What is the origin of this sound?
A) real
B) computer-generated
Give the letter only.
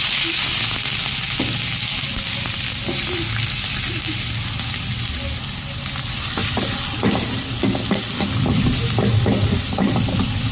A